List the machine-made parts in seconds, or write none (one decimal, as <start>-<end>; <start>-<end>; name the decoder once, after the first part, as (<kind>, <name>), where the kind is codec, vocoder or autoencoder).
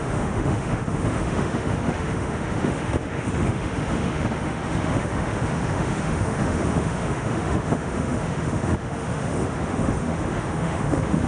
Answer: 0.0-11.3 (autoencoder, DAC-VAE)